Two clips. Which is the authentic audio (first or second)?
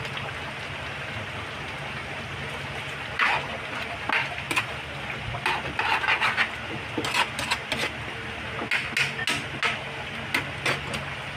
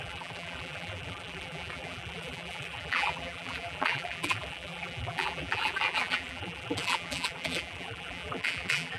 first